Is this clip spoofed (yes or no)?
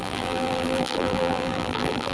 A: yes